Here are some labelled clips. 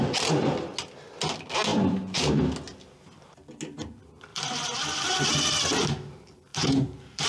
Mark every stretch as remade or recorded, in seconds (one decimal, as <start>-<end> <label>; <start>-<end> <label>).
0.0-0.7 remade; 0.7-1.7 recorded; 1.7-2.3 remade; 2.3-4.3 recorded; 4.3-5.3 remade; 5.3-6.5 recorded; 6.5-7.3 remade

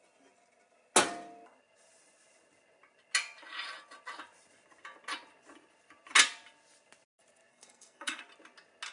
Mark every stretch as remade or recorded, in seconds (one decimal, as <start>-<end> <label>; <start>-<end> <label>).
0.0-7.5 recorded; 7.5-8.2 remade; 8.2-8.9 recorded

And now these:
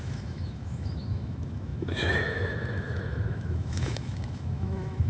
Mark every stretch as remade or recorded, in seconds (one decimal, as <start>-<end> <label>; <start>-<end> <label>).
0.0-5.1 remade

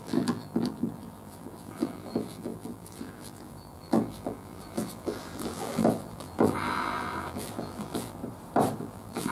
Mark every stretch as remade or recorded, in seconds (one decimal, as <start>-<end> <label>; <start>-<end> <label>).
0.0-8.2 remade; 8.2-8.8 recorded; 8.8-9.3 remade

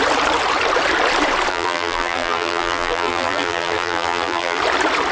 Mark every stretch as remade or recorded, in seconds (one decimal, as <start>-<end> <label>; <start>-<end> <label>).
0.0-1.5 recorded; 1.5-4.6 remade; 4.6-5.1 recorded